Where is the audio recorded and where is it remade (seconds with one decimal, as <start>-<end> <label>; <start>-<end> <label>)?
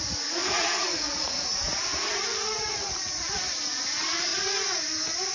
0.0-4.3 remade; 4.3-5.3 recorded